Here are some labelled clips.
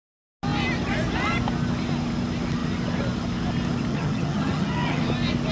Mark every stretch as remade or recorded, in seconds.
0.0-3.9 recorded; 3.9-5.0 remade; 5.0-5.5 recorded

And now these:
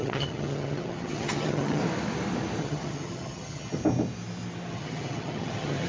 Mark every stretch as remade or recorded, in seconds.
0.0-1.8 remade; 1.8-2.6 recorded; 2.6-3.8 remade; 3.8-4.7 recorded; 4.7-5.9 remade

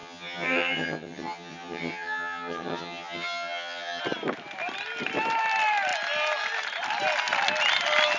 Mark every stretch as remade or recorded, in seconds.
0.0-4.0 remade; 4.0-8.2 recorded

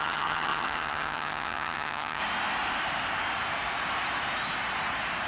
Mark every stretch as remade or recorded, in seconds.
0.0-2.2 remade; 2.2-5.3 recorded

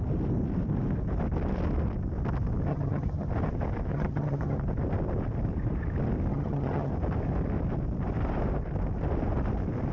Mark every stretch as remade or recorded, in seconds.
0.0-2.7 recorded; 2.7-3.3 remade; 3.3-3.9 recorded; 3.9-4.6 remade; 4.6-6.3 recorded; 6.3-6.9 remade; 6.9-9.9 recorded

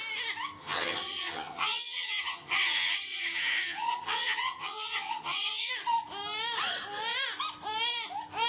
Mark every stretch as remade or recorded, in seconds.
0.0-0.6 recorded; 0.6-5.7 remade; 5.7-8.5 recorded

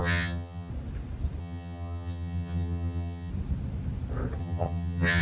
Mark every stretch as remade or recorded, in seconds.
0.0-0.7 remade; 0.7-1.4 recorded; 1.4-3.3 remade; 3.3-4.4 recorded; 4.4-5.2 remade